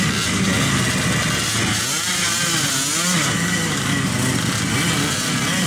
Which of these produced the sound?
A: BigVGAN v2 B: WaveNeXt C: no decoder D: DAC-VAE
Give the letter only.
C